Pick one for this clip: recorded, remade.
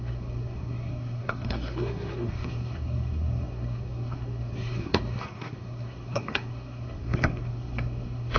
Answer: remade